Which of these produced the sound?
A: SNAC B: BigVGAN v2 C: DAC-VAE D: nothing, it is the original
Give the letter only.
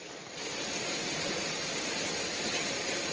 D